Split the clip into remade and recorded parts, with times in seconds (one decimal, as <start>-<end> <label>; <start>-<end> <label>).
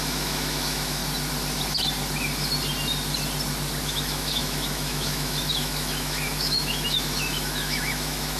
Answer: 0.0-1.0 remade; 1.0-3.8 recorded; 3.8-8.4 remade